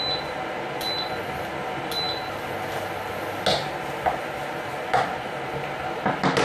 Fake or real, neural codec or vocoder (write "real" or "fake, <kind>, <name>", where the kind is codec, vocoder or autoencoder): real